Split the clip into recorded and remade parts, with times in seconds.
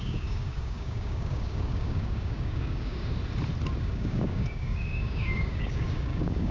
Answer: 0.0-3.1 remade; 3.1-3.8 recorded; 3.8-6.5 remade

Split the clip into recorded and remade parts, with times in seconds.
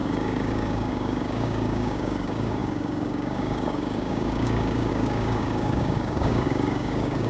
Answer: 0.0-7.3 remade